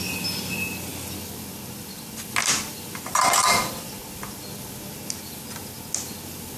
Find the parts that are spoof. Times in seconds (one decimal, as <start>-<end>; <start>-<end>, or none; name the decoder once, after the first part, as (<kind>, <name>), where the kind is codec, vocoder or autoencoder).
none